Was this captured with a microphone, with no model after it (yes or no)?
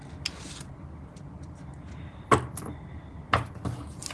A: yes